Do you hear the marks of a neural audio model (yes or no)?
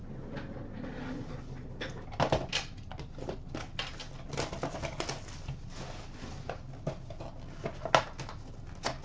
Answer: no